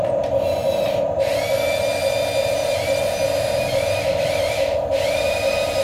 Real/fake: real